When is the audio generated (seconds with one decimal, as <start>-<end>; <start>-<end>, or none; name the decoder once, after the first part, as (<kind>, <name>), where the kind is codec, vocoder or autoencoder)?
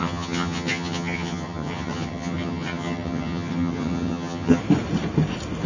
0.0-4.6 (vocoder, HiFi-GAN)